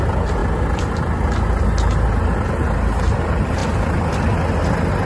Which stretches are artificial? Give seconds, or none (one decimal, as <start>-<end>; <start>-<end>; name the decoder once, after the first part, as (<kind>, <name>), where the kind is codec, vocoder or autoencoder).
none